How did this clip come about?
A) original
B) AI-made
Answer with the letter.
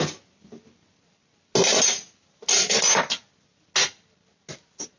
A